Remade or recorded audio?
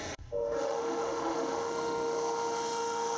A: remade